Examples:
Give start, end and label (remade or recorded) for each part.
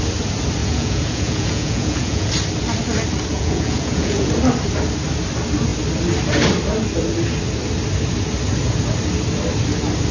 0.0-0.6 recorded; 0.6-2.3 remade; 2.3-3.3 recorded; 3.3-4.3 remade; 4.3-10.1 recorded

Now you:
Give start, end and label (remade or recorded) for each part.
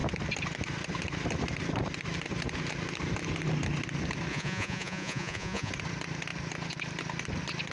0.0-4.3 recorded; 4.3-5.7 remade; 5.7-7.7 recorded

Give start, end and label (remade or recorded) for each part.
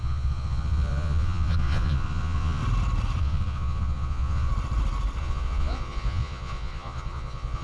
0.0-2.6 remade; 2.6-3.2 recorded; 3.2-4.5 remade; 4.5-5.2 recorded; 5.2-7.6 remade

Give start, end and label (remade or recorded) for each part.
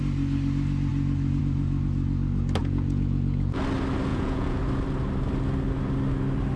0.0-2.6 recorded; 2.6-3.6 remade; 3.6-4.1 recorded; 4.1-4.6 remade; 4.6-6.6 recorded